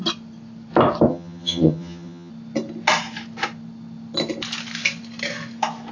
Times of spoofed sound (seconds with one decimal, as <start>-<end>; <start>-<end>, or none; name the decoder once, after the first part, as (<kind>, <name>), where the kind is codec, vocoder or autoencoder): 1.1-2.3 (vocoder, HiFi-GAN)